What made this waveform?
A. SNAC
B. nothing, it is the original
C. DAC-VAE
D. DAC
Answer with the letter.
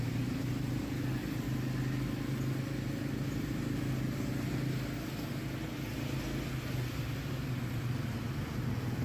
B